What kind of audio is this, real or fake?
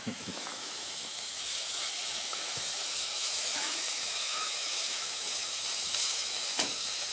fake